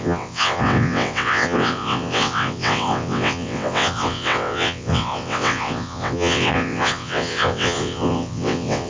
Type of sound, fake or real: fake